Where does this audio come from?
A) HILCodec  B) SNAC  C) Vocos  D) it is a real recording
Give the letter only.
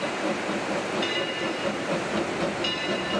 D